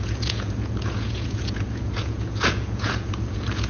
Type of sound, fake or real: fake